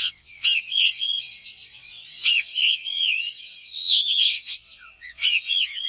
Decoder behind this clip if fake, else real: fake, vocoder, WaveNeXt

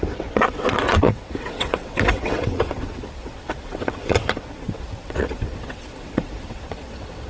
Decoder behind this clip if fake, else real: fake, vocoder, WaveNeXt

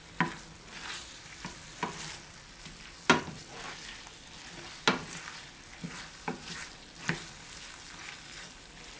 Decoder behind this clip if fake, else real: real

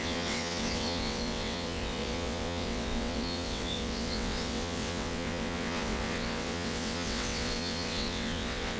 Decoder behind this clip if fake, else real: fake, vocoder, WaveNeXt